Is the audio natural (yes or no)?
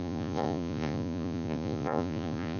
no